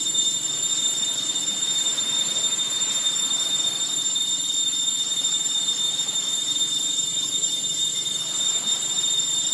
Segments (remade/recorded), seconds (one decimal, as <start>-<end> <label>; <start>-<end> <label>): 0.0-9.5 remade